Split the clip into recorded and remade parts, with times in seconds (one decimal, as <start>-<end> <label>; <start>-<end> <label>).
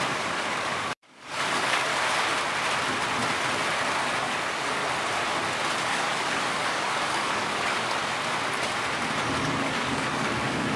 0.0-1.9 remade; 1.9-4.3 recorded; 4.3-4.8 remade; 4.8-5.9 recorded; 5.9-8.0 remade; 8.0-9.2 recorded; 9.2-10.8 remade